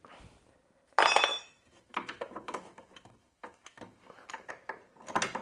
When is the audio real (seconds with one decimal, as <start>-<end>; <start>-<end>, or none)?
0.0-1.3; 4.5-5.4